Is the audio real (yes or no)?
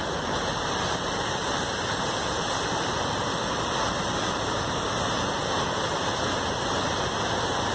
no